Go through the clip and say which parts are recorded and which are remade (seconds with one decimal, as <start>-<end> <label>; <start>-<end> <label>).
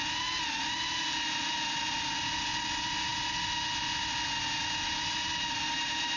0.0-6.2 recorded